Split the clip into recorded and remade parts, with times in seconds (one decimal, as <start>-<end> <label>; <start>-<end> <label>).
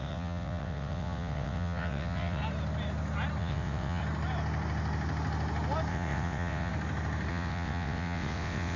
0.0-2.4 remade; 2.4-3.4 recorded; 3.4-4.0 remade; 4.0-5.9 recorded; 5.9-6.7 remade; 6.7-7.3 recorded; 7.3-8.8 remade